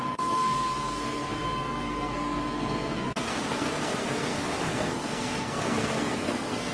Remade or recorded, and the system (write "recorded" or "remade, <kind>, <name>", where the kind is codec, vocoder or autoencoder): remade, codec, SNAC